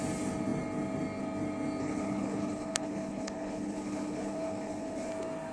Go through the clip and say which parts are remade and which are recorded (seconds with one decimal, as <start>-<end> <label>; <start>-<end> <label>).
0.0-1.8 recorded; 1.8-5.1 remade; 5.1-5.5 recorded